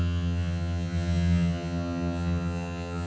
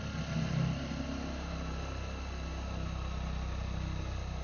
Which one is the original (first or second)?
second